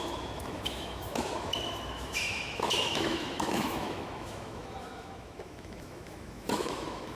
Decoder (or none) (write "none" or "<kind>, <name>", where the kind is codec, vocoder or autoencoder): autoencoder, DAC-VAE